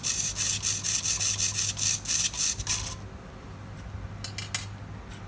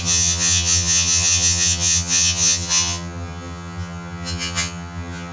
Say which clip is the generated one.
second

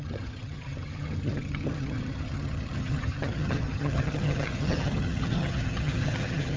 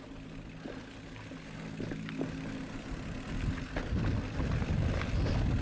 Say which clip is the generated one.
first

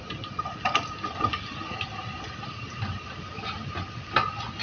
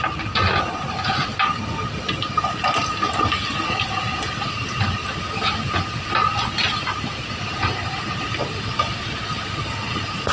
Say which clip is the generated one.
first